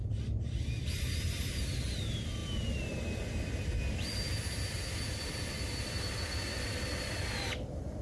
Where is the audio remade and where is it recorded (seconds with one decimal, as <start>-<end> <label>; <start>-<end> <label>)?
0.0-8.0 recorded